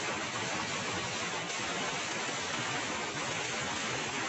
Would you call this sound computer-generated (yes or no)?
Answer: no